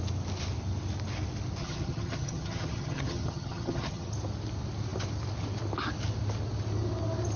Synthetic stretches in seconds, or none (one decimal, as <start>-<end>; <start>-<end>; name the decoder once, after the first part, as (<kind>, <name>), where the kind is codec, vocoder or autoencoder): 1.6-4.1 (vocoder, HiFi-GAN)